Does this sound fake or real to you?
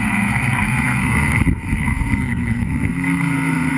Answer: fake